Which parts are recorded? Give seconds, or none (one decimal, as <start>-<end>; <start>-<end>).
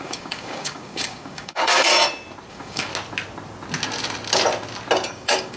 1.9-2.5; 2.9-5.1